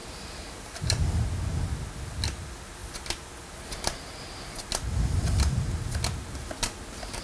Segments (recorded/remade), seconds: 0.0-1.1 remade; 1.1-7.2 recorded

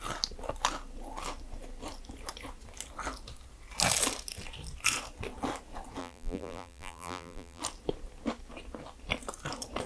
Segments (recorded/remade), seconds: 0.0-6.0 recorded; 6.0-7.6 remade; 7.6-9.9 recorded